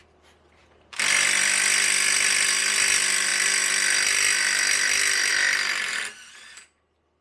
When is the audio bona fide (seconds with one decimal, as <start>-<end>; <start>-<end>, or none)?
0.0-7.2